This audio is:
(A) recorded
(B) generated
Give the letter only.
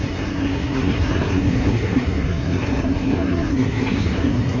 B